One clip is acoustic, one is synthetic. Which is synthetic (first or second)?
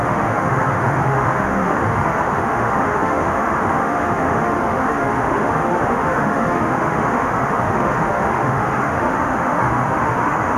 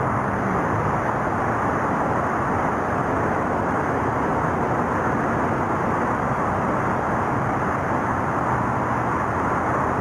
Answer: first